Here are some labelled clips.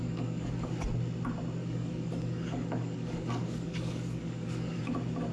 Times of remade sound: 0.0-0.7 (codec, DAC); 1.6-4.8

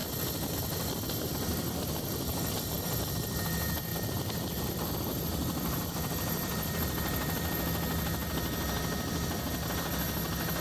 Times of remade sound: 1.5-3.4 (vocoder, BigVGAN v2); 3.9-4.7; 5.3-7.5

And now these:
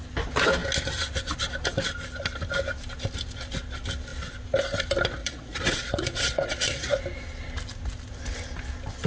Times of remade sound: 5.2-7.0 (vocoder, Vocos)

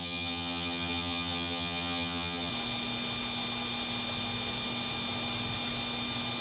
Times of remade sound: 0.0-2.5 (vocoder, HiFi-GAN)